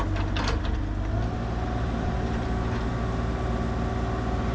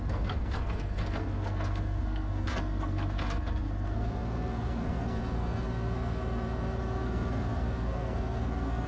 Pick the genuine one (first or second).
first